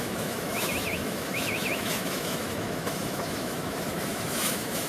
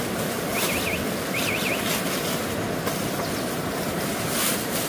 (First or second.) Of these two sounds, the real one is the second